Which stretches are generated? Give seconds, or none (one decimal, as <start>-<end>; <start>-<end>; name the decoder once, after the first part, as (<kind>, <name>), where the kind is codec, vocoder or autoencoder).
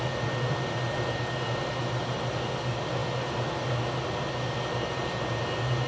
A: none